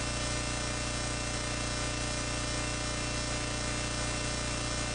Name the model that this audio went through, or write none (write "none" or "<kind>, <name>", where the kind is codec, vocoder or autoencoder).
none